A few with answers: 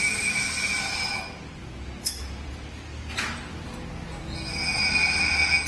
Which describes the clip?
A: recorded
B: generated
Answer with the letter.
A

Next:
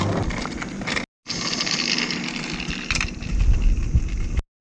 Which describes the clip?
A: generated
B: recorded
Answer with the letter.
B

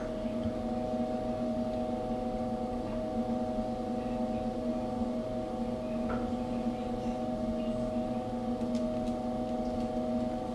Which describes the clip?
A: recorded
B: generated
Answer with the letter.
A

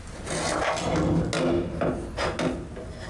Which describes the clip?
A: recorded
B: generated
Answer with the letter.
A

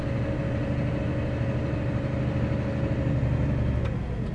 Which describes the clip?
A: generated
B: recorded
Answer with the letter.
B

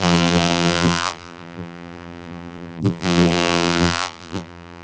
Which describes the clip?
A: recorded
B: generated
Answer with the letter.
B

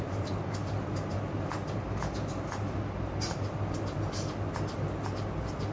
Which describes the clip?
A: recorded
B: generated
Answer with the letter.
A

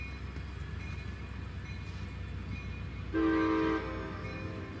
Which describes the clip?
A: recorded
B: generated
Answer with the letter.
A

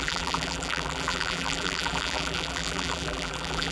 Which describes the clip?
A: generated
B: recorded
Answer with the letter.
A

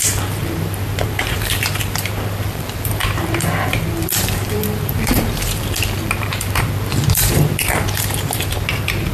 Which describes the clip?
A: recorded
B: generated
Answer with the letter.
B